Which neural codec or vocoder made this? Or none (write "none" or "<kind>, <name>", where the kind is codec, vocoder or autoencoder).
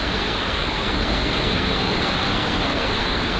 codec, SNAC